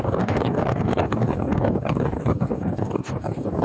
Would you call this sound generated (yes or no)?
yes